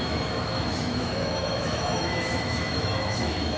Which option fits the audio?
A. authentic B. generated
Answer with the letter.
B